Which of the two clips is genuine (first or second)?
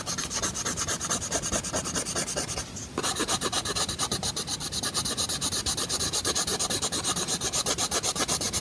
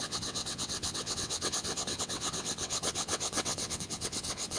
first